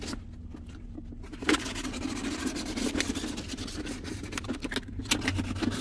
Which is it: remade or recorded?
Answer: recorded